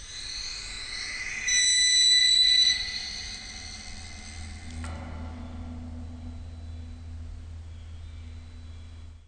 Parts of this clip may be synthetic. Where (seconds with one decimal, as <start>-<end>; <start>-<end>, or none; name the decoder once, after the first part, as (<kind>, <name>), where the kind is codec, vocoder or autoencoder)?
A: 2.2-2.8 (vocoder, Vocos)